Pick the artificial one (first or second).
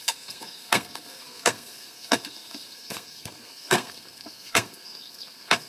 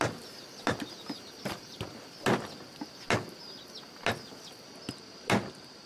first